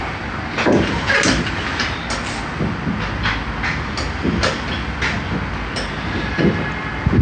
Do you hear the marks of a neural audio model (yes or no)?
no